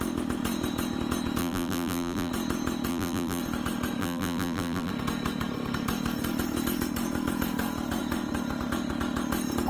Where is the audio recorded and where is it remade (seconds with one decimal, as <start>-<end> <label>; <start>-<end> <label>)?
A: 0.0-1.4 recorded; 1.4-2.3 remade; 2.3-2.9 recorded; 2.9-3.4 remade; 3.4-4.0 recorded; 4.0-4.9 remade; 4.9-9.7 recorded